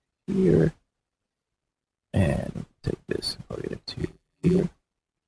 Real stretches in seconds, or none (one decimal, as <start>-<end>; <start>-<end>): 0.0-4.0; 4.6-5.3